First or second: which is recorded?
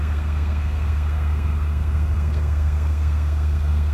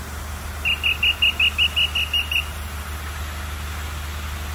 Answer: second